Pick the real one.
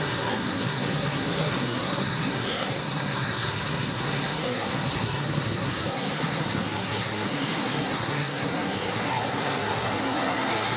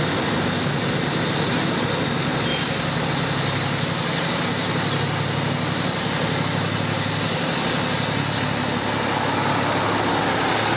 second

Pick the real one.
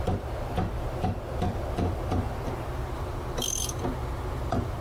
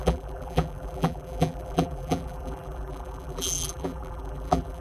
first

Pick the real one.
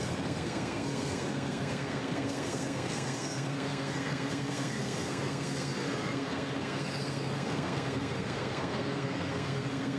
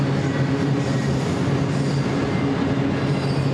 second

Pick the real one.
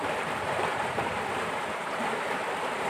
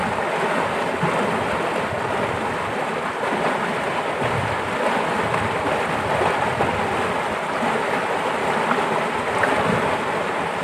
second